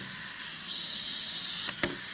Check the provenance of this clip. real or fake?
real